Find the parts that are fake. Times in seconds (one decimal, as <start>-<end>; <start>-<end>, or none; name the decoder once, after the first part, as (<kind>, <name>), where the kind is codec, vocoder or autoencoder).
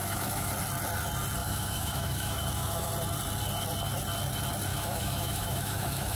0.0-0.5 (autoencoder, DAC-VAE); 1.4-2.9; 4.7-6.2